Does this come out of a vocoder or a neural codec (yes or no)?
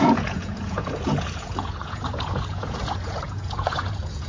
yes